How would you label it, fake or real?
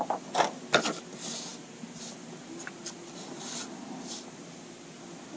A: real